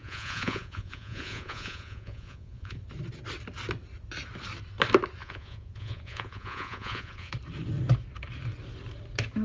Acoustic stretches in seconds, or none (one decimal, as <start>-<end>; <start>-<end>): 2.8-5.2; 7.3-9.4